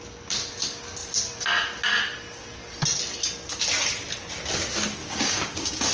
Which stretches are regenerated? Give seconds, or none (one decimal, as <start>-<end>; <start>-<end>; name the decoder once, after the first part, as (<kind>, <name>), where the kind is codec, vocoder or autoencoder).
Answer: 5.0-5.9 (codec, DAC)